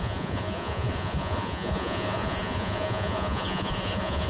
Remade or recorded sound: remade